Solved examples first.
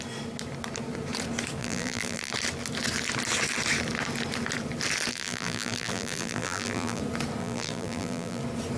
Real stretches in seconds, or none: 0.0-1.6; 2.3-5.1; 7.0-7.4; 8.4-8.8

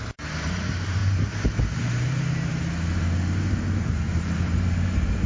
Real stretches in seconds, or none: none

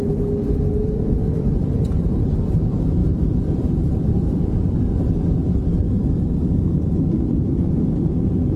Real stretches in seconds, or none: 0.0-0.8; 2.2-3.0; 4.8-5.4; 6.2-8.6

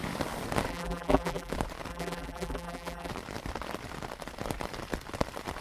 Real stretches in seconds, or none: 0.0-0.7; 1.5-1.9; 3.1-5.6

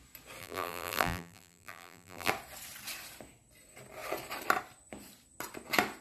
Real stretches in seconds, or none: 0.0-0.4; 2.3-6.0

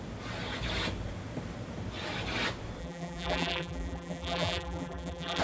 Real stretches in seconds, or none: 0.0-2.8